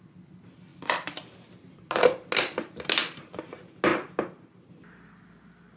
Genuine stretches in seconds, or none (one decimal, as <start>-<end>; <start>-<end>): 0.0-3.0; 3.5-5.8